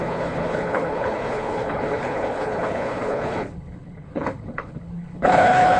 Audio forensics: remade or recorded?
remade